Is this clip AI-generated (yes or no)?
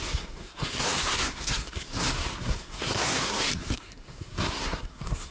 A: yes